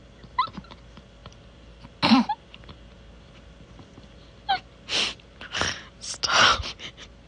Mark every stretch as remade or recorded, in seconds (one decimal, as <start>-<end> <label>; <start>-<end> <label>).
0.0-7.3 recorded